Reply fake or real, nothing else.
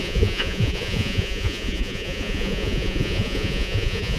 fake